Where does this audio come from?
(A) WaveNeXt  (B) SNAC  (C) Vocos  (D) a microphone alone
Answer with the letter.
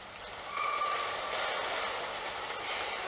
D